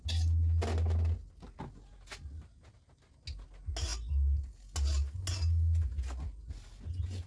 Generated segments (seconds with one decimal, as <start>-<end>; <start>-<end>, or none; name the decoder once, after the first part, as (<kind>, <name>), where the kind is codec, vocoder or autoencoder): none